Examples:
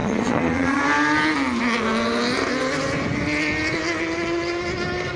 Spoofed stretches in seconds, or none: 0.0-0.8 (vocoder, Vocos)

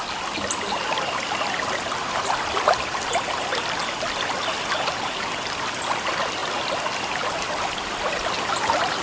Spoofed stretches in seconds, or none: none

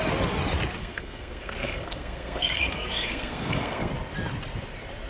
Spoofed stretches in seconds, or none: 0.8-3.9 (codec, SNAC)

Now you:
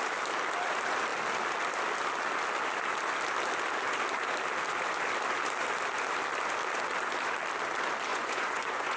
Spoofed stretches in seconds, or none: 8.1-9.0 (vocoder, Vocos)

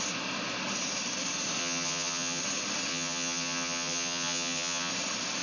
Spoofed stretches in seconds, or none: 1.6-2.4 (vocoder, HiFi-GAN); 2.9-4.9

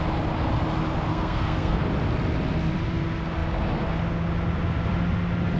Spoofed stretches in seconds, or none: 1.1-1.8 (codec, SNAC)